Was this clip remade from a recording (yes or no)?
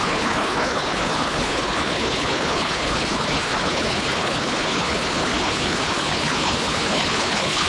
yes